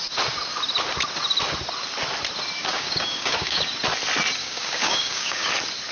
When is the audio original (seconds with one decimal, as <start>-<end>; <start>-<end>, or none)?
0.0-2.6; 3.7-4.4; 5.5-5.9